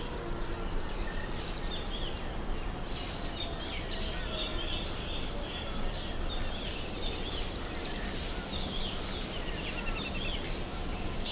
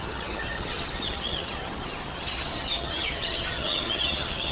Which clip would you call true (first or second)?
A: first